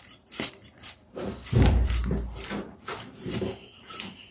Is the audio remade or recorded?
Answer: remade